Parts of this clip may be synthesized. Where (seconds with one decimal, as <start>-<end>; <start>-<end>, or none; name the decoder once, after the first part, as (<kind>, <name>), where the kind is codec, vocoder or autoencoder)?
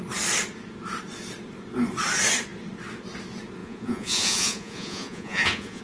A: 3.6-5.8 (vocoder, Vocos)